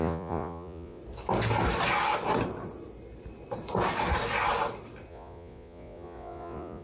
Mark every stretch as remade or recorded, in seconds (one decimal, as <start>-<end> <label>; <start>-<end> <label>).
0.0-1.0 remade; 1.0-5.1 recorded; 5.1-6.8 remade